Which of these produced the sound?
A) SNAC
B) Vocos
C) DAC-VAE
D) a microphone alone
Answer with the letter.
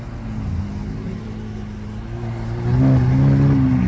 D